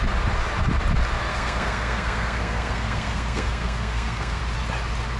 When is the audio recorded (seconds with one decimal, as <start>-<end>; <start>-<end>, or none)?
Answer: 0.0-1.3; 4.4-5.2